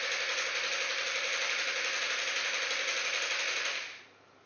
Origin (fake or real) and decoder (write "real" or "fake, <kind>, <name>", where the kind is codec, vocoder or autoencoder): real